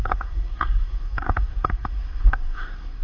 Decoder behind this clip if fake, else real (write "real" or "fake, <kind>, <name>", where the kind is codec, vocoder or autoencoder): fake, codec, SNAC